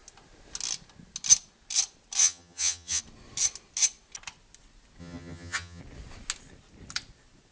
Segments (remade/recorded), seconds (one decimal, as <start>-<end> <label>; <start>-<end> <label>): 0.0-2.2 recorded; 2.2-3.0 remade; 3.0-5.0 recorded; 5.0-5.8 remade; 5.8-7.5 recorded